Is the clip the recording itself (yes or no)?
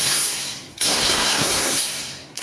no